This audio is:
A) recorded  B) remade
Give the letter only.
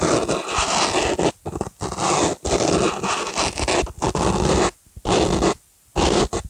A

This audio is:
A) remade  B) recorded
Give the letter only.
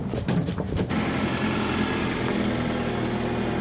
B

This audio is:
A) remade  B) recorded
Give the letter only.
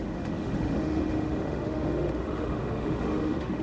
A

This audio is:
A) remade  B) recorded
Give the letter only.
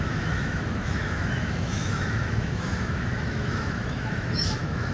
A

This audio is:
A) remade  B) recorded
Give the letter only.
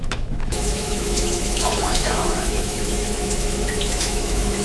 A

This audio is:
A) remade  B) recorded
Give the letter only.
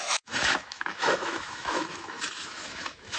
A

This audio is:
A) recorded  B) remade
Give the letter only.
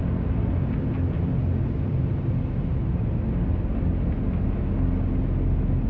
A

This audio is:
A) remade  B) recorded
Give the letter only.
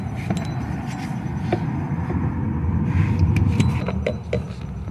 B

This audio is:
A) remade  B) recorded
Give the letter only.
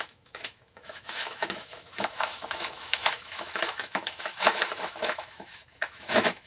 A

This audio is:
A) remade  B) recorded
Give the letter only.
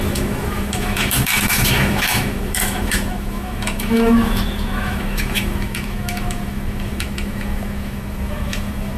A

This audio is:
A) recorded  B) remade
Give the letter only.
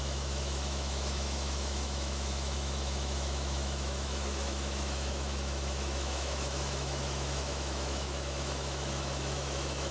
B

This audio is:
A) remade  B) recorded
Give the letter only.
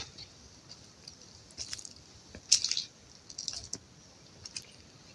B